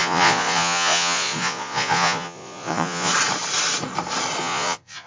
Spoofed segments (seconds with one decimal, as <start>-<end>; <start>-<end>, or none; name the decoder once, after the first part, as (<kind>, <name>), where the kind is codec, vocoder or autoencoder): 0.0-3.1 (vocoder, Vocos); 4.4-5.1